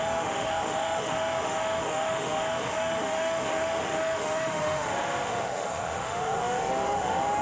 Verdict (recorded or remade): remade